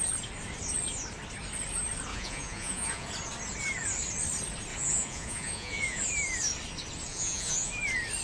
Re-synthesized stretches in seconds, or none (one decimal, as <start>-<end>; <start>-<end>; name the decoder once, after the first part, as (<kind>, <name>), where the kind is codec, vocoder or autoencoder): 2.1-3.1 (vocoder, Vocos); 4.7-6.0; 7.1-7.7

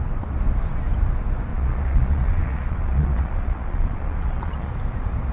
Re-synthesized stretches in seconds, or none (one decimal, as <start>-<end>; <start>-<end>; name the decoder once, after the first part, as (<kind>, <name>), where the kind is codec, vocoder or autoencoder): 1.5-4.7 (vocoder, Vocos)

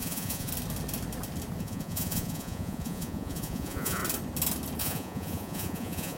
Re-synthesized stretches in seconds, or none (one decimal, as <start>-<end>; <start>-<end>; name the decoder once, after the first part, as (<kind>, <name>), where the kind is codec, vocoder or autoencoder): 0.0-0.5 (vocoder, Vocos); 1.6-4.0; 4.8-6.2

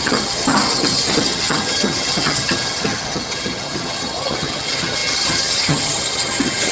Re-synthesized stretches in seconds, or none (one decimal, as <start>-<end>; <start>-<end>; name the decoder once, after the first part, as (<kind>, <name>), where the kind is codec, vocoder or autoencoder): 0.0-6.7 (vocoder, HiFi-GAN)

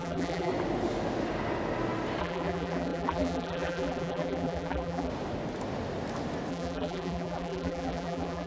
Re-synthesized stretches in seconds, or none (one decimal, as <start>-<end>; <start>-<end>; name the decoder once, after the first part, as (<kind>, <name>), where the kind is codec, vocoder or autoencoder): 0.0-0.5 (vocoder, BigVGAN v2); 2.2-5.1; 6.5-8.5